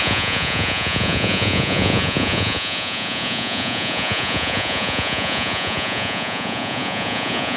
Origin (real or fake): fake